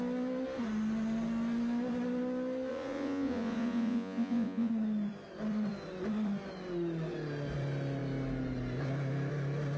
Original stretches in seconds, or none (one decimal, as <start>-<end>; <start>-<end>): 0.0-2.7; 4.7-9.8